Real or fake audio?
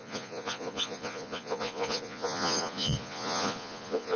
fake